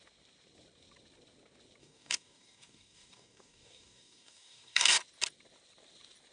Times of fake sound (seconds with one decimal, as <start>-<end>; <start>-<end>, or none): 1.8-5.0